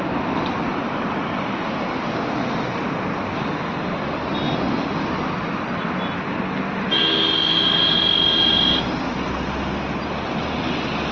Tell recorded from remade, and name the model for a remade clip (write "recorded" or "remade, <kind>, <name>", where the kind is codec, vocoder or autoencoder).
recorded